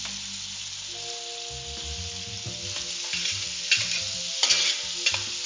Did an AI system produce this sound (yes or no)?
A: no